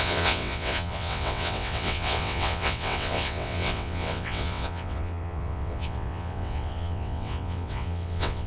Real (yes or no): no